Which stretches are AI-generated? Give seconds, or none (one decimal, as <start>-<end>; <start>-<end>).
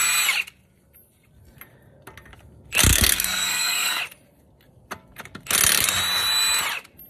2.9-4.0